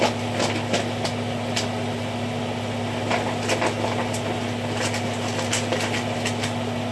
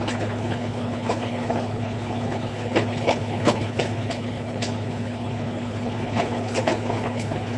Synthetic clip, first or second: second